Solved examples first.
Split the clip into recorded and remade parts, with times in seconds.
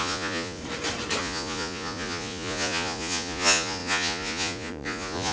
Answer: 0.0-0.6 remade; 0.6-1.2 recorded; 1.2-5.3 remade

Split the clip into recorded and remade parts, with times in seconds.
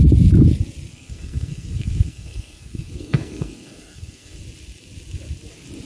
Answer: 0.0-0.9 recorded; 0.9-4.4 remade; 4.4-5.9 recorded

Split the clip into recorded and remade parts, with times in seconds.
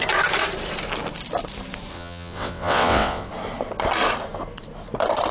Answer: 0.0-1.9 recorded; 1.9-3.3 remade; 3.3-5.3 recorded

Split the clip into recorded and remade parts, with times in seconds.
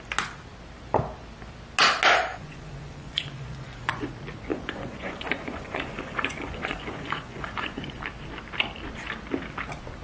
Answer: 0.0-2.3 recorded; 2.3-4.1 remade; 4.1-4.5 recorded; 4.5-8.0 remade; 8.0-10.0 recorded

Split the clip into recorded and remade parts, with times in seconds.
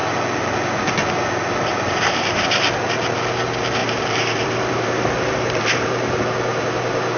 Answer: 0.0-1.7 recorded; 1.7-2.4 remade; 2.4-3.8 recorded; 3.8-6.2 remade; 6.2-7.2 recorded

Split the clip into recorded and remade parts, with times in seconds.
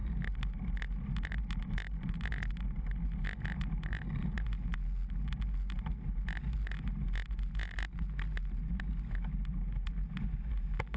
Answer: 0.0-11.0 recorded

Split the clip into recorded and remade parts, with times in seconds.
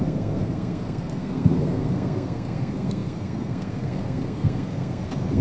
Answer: 0.0-5.4 remade